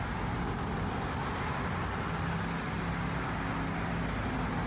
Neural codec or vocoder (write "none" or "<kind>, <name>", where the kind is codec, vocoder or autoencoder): none